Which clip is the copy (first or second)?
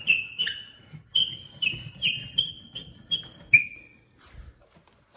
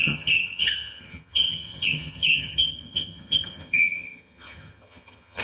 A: second